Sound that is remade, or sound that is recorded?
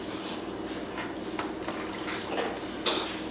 recorded